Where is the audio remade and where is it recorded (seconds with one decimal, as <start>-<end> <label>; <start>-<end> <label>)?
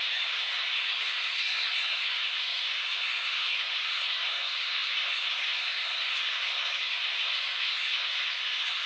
0.0-8.9 remade